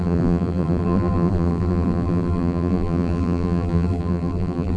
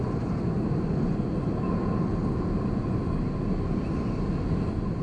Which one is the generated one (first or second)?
first